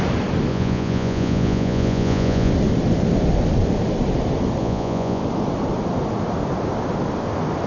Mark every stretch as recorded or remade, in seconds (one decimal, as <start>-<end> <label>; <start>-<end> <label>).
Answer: 0.0-0.5 recorded; 0.5-2.5 remade; 2.5-4.6 recorded; 4.6-5.2 remade; 5.2-7.7 recorded